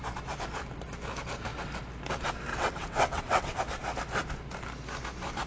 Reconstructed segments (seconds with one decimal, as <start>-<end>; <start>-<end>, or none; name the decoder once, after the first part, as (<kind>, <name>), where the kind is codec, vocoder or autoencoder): 2.5-3.6 (vocoder, WaveNeXt)